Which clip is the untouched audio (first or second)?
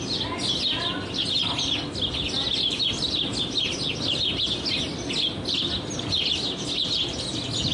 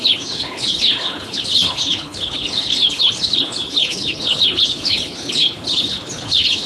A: first